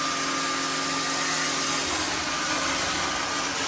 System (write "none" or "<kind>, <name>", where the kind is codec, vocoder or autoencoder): none